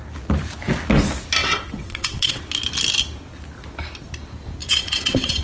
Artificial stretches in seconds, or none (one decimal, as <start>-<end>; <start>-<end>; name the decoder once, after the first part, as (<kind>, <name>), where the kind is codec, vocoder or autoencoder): 1.4-2.4 (vocoder, WaveNeXt); 4.6-5.4